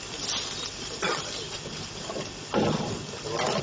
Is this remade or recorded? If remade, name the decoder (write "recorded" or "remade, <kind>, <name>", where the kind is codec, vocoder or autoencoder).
recorded